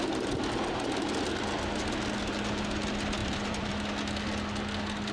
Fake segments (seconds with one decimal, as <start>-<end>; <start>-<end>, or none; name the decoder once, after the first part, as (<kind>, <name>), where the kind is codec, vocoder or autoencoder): 3.2-3.7 (vocoder, BigVGAN v2)